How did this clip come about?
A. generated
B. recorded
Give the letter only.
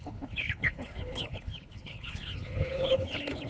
A